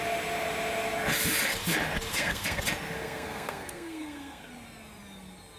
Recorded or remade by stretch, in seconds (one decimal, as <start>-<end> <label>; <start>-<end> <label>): 0.0-2.1 recorded; 2.1-2.6 remade; 2.6-3.0 recorded; 3.0-4.5 remade; 4.5-5.6 recorded